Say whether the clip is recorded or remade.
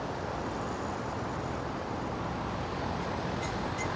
recorded